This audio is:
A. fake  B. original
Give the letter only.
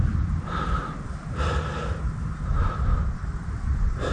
B